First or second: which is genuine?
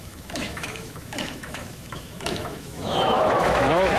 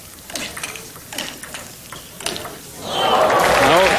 second